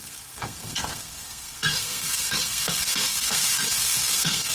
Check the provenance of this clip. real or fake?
fake